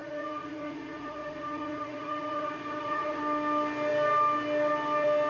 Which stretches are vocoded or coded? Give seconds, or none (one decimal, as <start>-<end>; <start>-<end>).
0.0-3.2